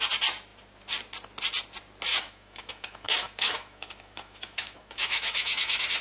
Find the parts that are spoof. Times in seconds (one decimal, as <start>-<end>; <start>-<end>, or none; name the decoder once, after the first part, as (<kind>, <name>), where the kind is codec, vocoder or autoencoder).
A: 2.1-6.0 (autoencoder, DAC-VAE)